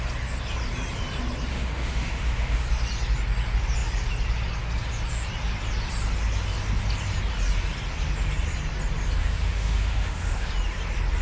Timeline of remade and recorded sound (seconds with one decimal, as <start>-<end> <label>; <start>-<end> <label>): 0.0-1.5 recorded; 1.5-2.6 remade; 2.6-9.2 recorded; 9.2-10.5 remade; 10.5-11.2 recorded